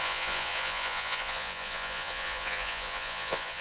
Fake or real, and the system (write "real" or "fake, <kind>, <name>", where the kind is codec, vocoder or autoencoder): fake, vocoder, Vocos